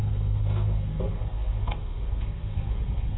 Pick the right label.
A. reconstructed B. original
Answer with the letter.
A